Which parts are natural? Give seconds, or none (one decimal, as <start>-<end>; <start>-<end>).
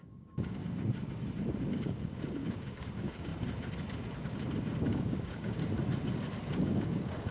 0.6-1.6; 3.3-4.9; 5.6-6.5